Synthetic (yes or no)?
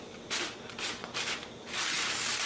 no